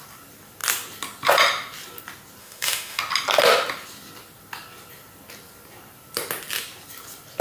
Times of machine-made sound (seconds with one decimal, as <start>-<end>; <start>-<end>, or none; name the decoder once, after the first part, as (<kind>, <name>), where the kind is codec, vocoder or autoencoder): 2.4-3.0 (autoencoder, DAC-VAE)